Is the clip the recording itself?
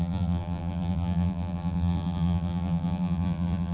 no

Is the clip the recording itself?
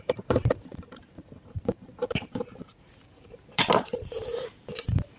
no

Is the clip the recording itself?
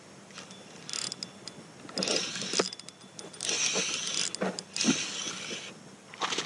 yes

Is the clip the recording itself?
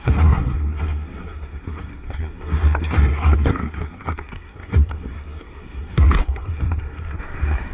no